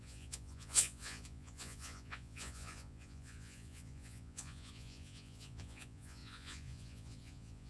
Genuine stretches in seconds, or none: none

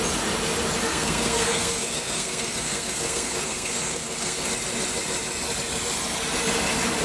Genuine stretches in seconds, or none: 0.0-0.9; 4.5-7.0

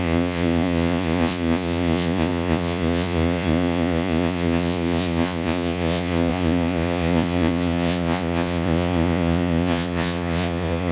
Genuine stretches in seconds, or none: none

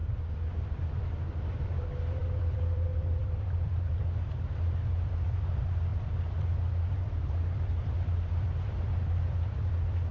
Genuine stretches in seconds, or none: none

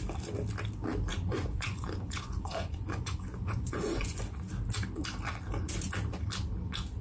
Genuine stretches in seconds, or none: 0.0-1.1; 4.5-7.0

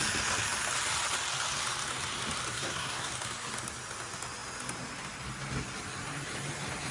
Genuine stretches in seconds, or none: 0.0-2.5; 3.1-6.9

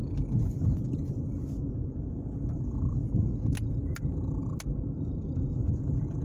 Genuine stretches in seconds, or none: 0.0-6.2